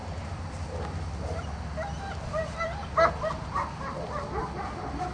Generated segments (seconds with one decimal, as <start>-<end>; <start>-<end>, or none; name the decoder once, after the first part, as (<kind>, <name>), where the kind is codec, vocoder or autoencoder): none